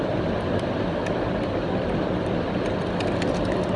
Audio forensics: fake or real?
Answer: fake